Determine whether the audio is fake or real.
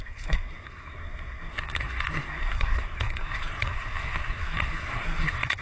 fake